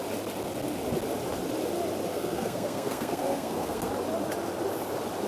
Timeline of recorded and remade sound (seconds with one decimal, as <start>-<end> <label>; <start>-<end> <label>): 0.0-2.1 recorded; 2.1-3.9 remade; 3.9-5.3 recorded